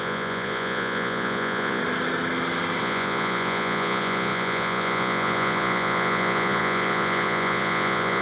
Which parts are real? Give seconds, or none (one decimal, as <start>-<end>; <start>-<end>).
1.8-2.8